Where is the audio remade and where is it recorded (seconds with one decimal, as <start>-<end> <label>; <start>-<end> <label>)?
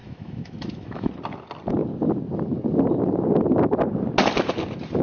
0.0-1.1 remade; 1.1-5.0 recorded